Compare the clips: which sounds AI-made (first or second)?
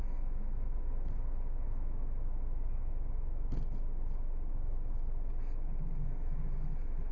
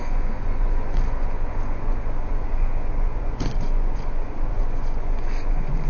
second